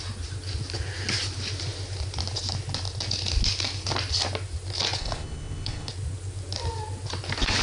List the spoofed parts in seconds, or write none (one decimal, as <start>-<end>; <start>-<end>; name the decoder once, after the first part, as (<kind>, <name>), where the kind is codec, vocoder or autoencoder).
5.0-5.9 (codec, HILCodec)